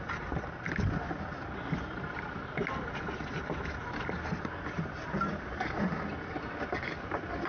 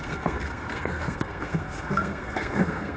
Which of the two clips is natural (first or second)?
first